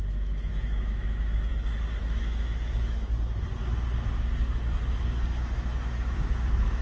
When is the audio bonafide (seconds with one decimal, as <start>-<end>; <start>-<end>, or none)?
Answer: 1.5-2.0; 3.1-5.4